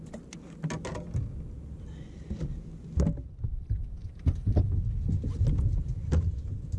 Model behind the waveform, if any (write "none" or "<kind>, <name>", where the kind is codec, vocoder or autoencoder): none